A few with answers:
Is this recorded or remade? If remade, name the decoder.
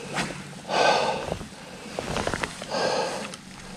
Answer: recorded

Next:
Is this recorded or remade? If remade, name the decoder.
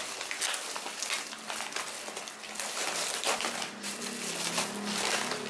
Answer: recorded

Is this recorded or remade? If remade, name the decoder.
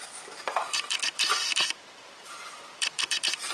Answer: remade, vocoder, BigVGAN v2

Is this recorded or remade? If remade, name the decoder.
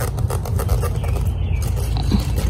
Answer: recorded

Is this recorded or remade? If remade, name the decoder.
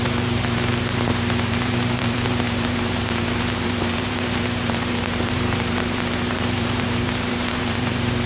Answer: remade, vocoder, BigVGAN v2